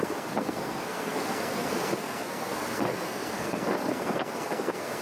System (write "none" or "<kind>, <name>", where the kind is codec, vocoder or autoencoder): codec, SNAC